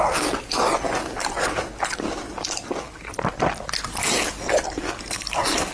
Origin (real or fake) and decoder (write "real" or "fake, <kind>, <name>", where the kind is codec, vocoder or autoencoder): real